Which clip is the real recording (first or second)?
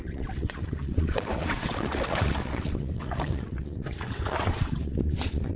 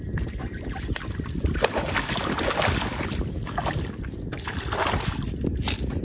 second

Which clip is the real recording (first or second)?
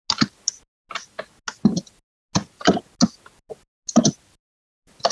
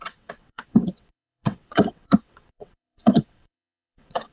first